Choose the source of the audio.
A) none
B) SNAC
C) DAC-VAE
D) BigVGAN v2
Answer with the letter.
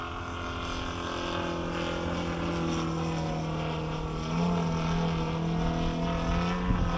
A